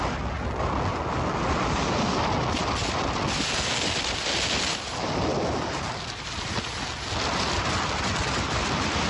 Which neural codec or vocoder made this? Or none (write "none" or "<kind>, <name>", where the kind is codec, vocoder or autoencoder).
none